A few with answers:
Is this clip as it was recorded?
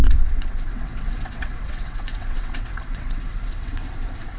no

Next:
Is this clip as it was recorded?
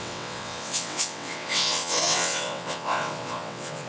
no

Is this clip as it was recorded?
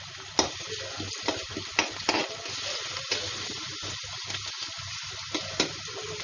yes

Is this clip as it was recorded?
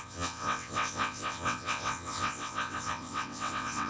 no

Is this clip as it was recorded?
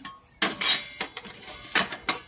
yes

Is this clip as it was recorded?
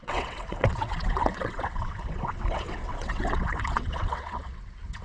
no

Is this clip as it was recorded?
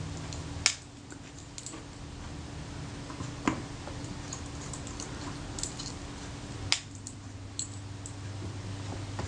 yes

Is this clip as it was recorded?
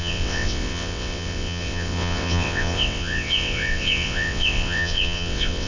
no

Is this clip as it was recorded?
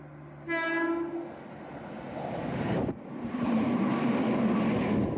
yes